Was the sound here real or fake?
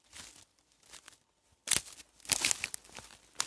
real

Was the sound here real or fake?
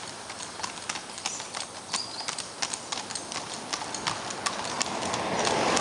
real